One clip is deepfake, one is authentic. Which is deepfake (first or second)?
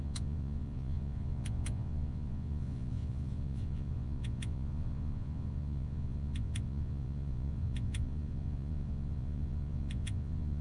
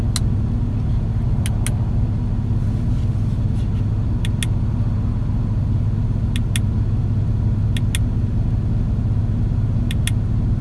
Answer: first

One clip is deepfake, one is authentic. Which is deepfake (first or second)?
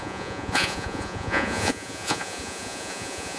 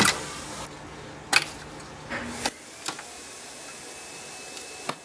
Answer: first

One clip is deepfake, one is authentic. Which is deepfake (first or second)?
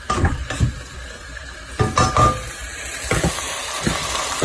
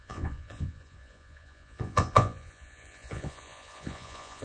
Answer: second